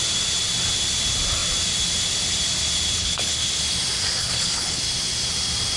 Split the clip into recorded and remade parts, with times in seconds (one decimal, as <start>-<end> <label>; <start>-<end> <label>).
0.0-3.0 recorded; 3.0-3.5 remade; 3.5-4.2 recorded; 4.2-4.8 remade; 4.8-5.8 recorded